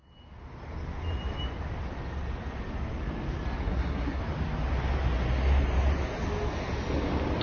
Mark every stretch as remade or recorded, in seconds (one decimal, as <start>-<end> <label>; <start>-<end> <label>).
0.0-3.6 recorded; 3.6-4.2 remade; 4.2-7.4 recorded